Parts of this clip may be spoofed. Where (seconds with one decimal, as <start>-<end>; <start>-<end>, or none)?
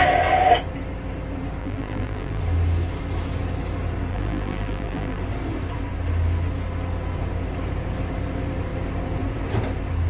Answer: 1.6-2.4; 4.1-5.2